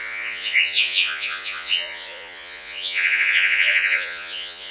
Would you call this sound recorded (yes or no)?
no